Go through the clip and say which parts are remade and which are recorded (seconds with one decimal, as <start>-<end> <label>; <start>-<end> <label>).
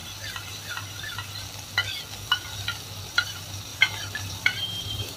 0.0-3.1 recorded; 3.1-3.7 remade; 3.7-4.3 recorded; 4.3-5.2 remade